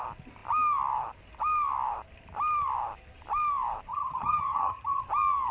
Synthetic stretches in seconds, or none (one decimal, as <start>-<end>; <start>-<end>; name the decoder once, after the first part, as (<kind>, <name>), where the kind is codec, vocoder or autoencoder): 3.9-5.0 (vocoder, HiFi-GAN)